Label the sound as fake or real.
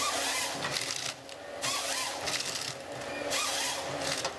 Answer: real